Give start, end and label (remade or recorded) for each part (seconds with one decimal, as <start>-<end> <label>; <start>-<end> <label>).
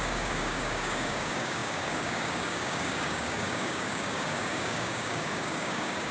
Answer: 0.0-6.1 remade